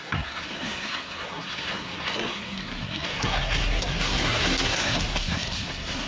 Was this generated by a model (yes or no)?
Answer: yes